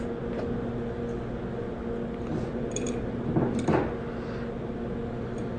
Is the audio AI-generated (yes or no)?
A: no